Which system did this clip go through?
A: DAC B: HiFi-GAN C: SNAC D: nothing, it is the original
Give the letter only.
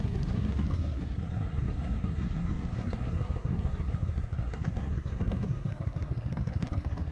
C